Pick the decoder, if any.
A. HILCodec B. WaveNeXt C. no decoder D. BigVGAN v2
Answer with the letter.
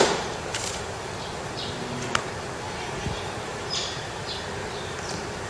D